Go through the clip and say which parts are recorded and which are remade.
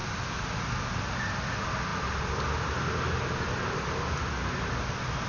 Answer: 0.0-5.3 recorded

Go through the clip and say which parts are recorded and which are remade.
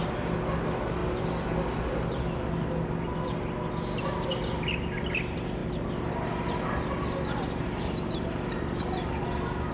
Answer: 0.0-9.7 recorded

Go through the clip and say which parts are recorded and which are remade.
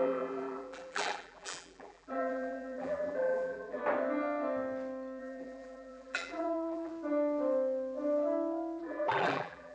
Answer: 0.0-3.8 remade; 3.8-5.2 recorded; 5.2-6.9 remade; 6.9-8.8 recorded; 8.8-9.7 remade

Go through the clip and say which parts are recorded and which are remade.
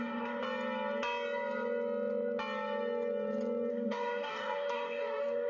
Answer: 0.0-0.4 remade; 0.4-3.7 recorded; 3.7-5.5 remade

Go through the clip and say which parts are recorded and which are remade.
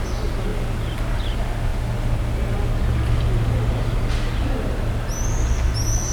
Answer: 0.0-6.1 recorded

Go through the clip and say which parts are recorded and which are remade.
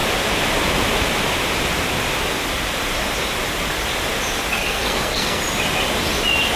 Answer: 0.0-4.5 recorded; 4.5-5.4 remade; 5.4-6.6 recorded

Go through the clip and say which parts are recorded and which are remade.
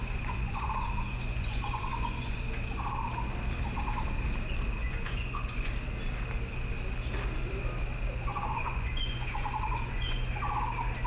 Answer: 0.0-2.4 remade; 2.4-4.8 recorded; 4.8-5.7 remade; 5.7-8.3 recorded; 8.3-10.3 remade; 10.3-11.1 recorded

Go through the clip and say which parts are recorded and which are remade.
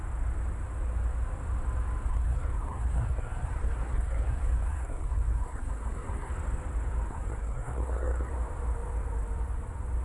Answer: 0.0-2.1 recorded; 2.1-6.3 remade; 6.3-7.1 recorded; 7.1-8.3 remade; 8.3-10.0 recorded